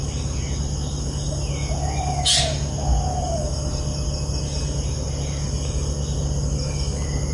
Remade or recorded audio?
recorded